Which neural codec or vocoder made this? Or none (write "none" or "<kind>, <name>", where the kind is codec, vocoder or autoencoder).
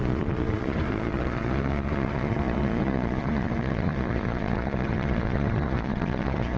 vocoder, Vocos